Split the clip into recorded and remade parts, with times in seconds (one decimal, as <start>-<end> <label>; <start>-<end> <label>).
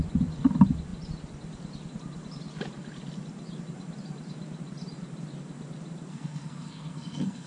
0.0-6.1 recorded; 6.1-7.5 remade